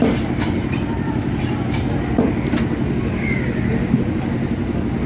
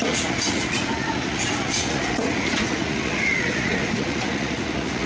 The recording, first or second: first